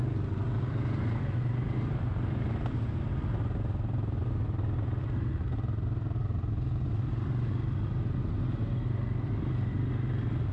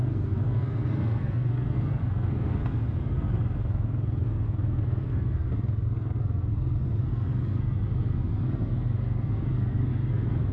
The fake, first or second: second